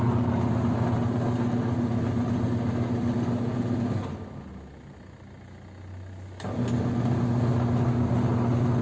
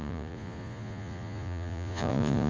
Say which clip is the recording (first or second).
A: first